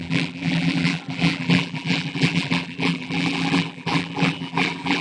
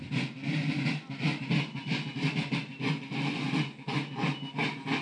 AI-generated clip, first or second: first